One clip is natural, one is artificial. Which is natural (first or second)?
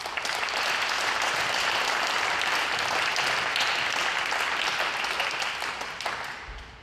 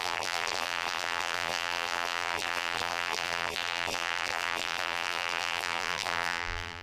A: first